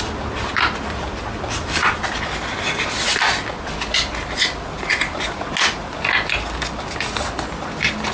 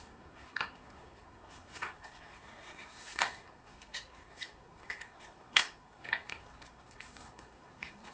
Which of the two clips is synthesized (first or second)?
second